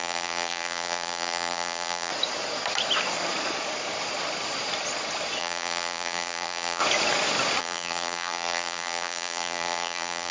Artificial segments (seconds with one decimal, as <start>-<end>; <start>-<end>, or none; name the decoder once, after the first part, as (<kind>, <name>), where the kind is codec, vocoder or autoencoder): 0.0-2.1 (vocoder, BigVGAN v2); 5.4-6.8; 7.6-10.3